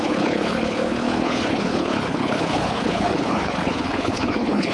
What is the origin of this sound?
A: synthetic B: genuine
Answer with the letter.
A